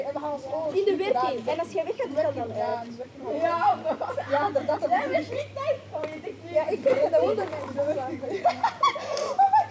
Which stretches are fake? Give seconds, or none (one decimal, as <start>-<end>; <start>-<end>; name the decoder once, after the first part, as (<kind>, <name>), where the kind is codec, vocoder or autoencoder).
0.0-9.7 (vocoder, BigVGAN v2)